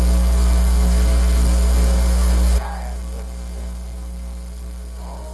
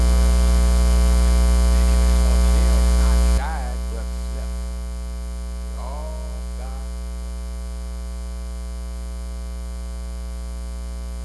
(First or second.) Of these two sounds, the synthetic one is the first